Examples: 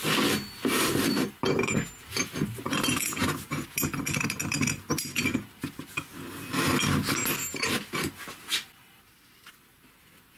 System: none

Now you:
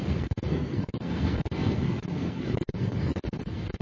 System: codec, SNAC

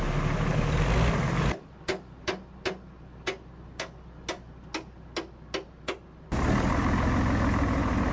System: none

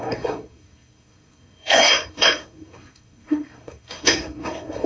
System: codec, SNAC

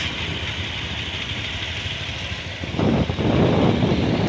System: none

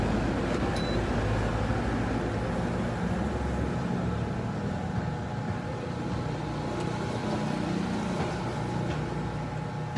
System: none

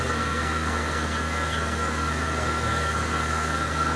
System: codec, SNAC